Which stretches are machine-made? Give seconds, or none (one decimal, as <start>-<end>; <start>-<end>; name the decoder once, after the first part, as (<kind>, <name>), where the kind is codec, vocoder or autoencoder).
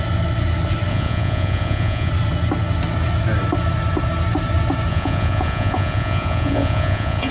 0.9-2.1 (vocoder, Vocos); 4.9-7.3